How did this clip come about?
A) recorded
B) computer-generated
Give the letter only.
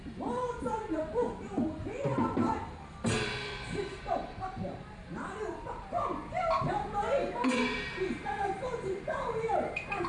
B